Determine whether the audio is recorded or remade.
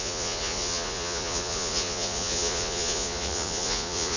remade